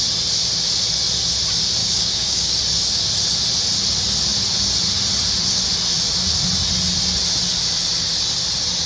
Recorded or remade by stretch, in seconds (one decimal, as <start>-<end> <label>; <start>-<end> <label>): 0.0-1.8 recorded; 1.8-2.6 remade; 2.6-8.9 recorded